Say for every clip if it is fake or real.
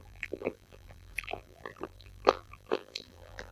fake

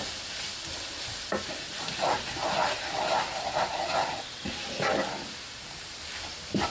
real